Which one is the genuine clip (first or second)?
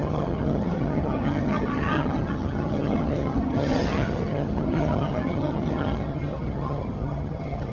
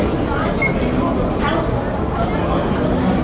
second